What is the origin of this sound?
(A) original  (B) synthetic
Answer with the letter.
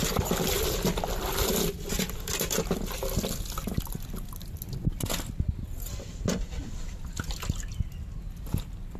A